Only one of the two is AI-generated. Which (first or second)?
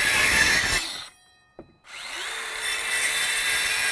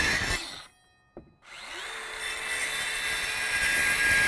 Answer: first